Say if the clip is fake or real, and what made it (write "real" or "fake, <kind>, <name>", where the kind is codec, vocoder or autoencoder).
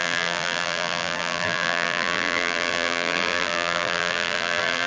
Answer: fake, vocoder, BigVGAN v2